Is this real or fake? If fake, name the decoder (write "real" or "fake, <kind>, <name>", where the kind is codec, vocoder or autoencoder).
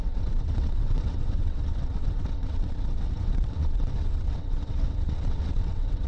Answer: fake, vocoder, WaveNeXt